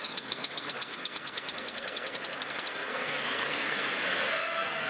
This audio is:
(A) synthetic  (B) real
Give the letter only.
A